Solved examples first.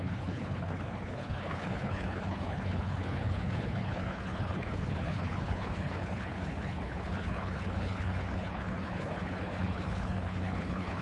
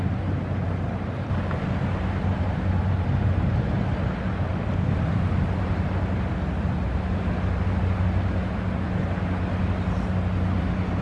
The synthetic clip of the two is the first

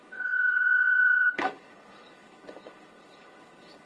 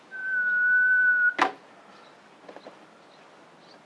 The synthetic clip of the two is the first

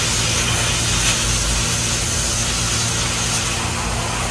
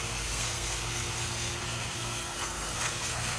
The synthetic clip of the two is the second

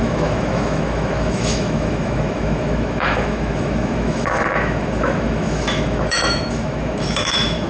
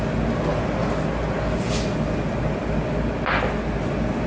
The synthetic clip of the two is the first